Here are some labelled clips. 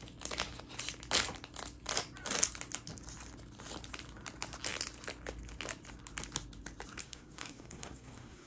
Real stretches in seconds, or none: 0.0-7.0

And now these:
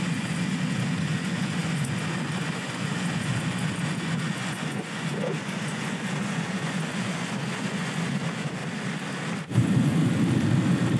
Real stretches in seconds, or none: 8.6-9.4; 10.0-11.0

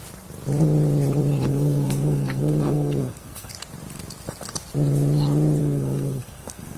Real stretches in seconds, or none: 0.0-1.5; 3.5-5.6

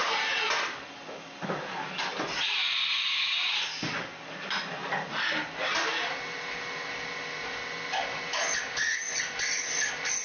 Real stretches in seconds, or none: 0.0-10.2

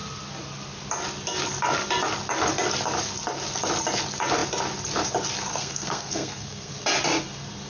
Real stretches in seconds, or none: 0.0-5.5; 6.7-7.7

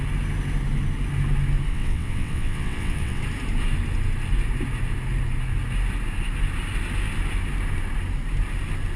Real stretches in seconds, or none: 0.0-1.7; 3.2-9.0